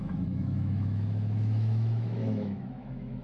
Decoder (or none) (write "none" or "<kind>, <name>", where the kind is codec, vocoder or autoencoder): autoencoder, DAC-VAE